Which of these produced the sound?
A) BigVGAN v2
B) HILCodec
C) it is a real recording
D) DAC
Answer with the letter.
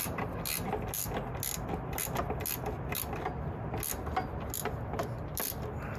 C